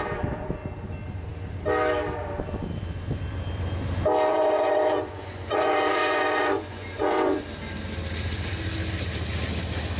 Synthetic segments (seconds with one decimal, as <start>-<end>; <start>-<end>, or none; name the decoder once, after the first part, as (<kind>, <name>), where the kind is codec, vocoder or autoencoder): 4.3-7.4 (vocoder, Vocos)

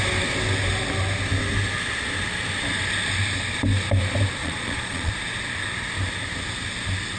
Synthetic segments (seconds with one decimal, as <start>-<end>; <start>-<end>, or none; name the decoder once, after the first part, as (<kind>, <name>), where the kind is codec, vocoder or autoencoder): 4.4-5.1 (vocoder, Vocos)

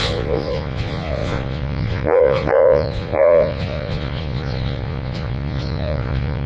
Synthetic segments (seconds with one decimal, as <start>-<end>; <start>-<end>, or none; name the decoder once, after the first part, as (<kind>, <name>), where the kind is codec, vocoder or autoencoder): 0.0-6.5 (vocoder, Vocos)

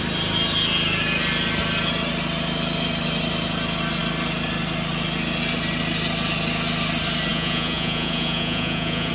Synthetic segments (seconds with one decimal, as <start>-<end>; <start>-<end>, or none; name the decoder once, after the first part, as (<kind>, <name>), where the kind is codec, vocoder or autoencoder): 7.3-9.1 (vocoder, Vocos)

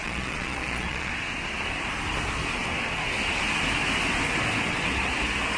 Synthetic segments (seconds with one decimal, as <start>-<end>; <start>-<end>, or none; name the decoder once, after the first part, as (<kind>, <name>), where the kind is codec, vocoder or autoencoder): 0.0-1.1 (vocoder, Vocos)

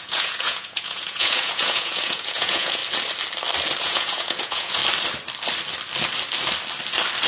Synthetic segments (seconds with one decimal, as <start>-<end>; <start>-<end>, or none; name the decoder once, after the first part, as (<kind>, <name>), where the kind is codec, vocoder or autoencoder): 0.0-2.8 (vocoder, Vocos); 3.8-4.8